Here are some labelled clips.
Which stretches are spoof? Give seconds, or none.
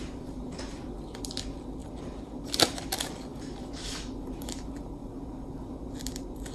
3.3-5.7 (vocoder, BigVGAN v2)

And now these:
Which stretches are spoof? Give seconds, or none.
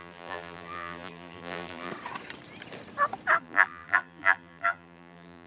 0.0-1.9 (vocoder, BigVGAN v2); 3.4-5.5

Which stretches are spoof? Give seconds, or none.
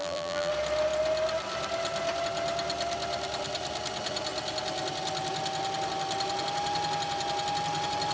0.0-0.5 (vocoder, BigVGAN v2)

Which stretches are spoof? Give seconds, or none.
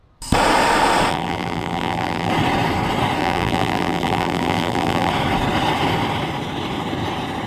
1.1-2.3 (vocoder, BigVGAN v2); 3.2-5.1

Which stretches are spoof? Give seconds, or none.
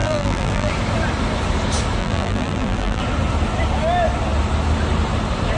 0.0-0.7 (vocoder, BigVGAN v2); 2.0-3.0